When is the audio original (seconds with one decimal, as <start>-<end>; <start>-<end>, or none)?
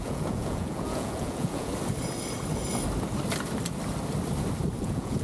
1.7-4.8